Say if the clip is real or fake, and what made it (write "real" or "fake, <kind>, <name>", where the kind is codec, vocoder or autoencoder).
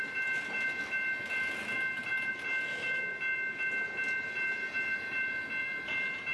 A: real